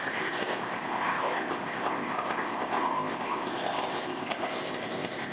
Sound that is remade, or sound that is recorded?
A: remade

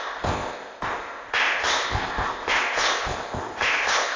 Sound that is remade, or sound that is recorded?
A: remade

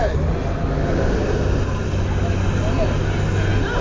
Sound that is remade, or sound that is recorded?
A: recorded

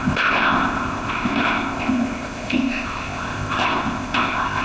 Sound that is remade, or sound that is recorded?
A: remade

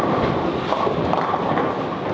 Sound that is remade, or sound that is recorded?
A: recorded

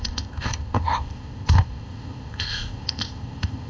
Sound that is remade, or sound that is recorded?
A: remade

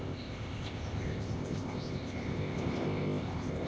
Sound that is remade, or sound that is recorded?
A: remade